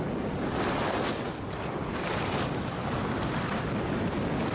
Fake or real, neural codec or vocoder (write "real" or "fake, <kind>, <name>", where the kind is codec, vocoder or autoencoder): real